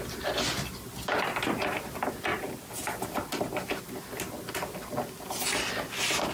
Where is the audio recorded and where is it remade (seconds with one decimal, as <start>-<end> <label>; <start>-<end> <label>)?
0.0-2.3 recorded; 2.3-3.8 remade; 3.8-6.3 recorded